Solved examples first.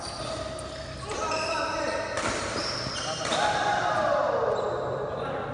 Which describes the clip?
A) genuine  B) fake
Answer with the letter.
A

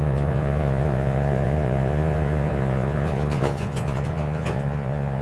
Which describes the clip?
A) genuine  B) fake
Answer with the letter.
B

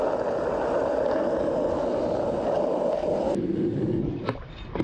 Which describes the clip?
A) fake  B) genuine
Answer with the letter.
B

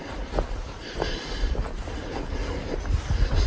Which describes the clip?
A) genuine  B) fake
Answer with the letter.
A